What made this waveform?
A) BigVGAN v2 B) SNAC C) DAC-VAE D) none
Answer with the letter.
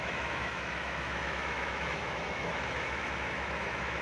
C